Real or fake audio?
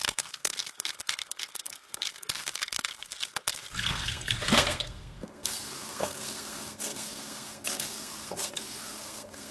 fake